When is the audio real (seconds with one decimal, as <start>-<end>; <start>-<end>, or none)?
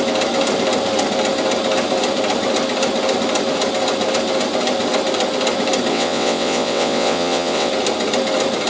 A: 0.0-5.9; 7.7-8.7